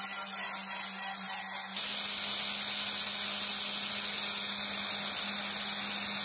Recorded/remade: recorded